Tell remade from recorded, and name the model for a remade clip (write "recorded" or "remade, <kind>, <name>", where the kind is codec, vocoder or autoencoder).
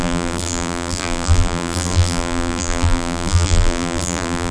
remade, vocoder, BigVGAN v2